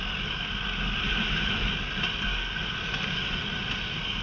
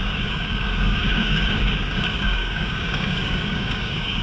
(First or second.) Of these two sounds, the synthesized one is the second